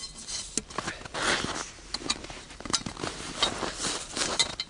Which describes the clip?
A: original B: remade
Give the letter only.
A